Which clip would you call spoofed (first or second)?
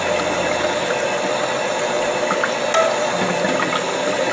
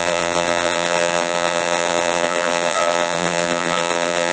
second